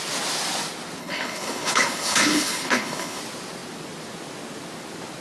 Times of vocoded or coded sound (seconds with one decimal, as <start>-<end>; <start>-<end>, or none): 1.0-3.2